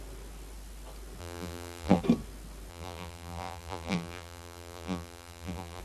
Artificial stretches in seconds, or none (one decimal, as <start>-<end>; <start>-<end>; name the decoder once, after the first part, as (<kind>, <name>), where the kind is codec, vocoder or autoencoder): 1.2-2.0 (vocoder, BigVGAN v2); 2.7-5.8